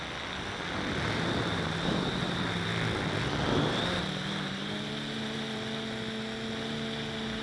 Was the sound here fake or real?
real